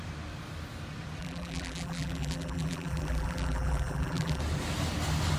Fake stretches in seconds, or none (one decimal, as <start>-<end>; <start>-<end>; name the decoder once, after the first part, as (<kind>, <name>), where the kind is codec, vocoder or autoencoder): 1.2-4.4 (vocoder, BigVGAN v2)